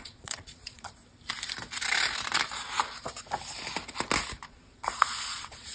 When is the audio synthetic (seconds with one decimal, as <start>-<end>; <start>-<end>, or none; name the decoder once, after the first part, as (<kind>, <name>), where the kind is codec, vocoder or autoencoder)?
0.0-1.0 (vocoder, Vocos); 4.4-5.7